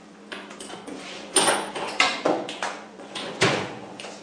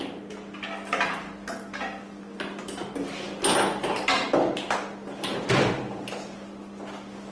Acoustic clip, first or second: second